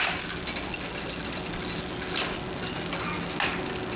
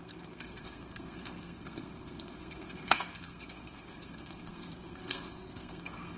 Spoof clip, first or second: second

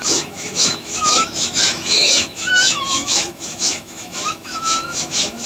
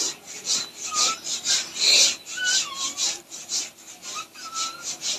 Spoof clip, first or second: first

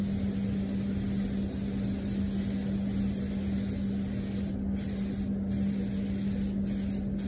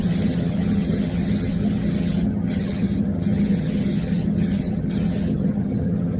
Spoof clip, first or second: second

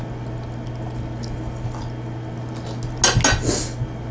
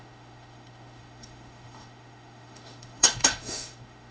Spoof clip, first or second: second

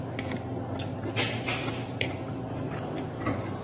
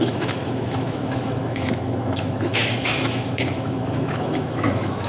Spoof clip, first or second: second